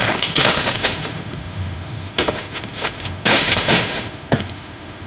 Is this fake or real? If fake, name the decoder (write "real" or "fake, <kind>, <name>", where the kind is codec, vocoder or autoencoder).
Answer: fake, autoencoder, DAC-VAE